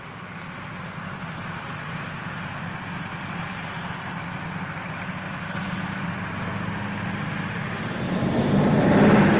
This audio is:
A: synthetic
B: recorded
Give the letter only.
B